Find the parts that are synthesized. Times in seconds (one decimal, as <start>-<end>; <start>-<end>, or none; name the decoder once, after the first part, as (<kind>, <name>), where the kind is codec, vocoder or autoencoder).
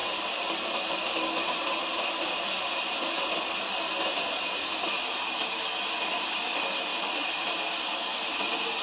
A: 0.0-3.3 (vocoder, BigVGAN v2); 6.9-7.6